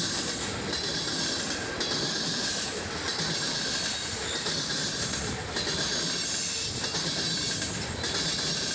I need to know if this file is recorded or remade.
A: recorded